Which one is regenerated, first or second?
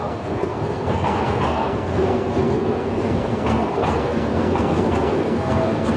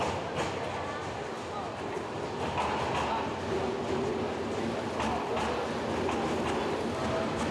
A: first